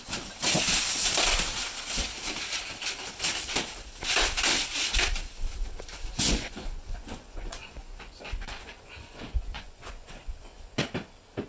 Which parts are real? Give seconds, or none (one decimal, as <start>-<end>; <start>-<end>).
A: 0.0-6.1; 10.8-11.5